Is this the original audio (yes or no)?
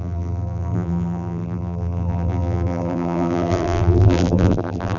no